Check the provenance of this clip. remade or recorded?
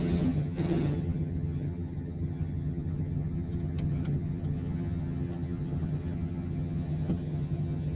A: remade